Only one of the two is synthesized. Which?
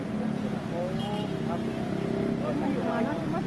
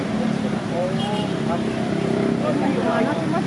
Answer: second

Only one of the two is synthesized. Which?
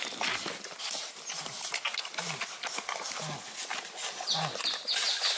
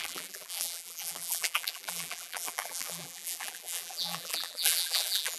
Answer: second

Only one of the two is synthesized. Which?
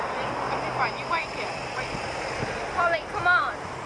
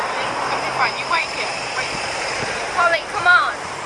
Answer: second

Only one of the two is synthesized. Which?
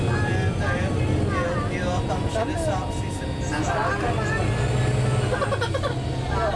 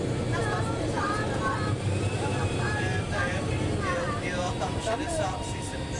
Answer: second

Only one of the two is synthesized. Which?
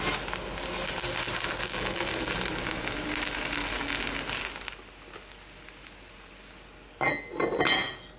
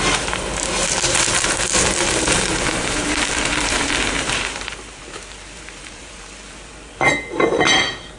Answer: second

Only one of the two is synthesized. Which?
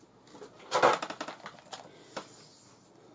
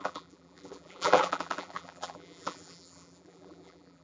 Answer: second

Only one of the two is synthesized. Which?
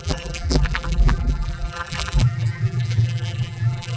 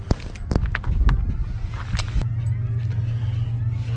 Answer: first